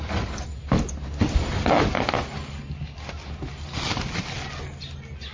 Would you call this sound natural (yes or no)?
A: yes